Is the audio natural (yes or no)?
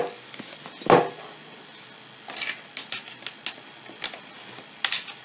yes